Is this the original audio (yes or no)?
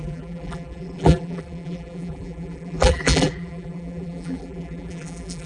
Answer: no